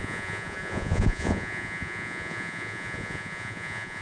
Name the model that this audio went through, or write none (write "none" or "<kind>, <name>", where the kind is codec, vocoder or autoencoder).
vocoder, Vocos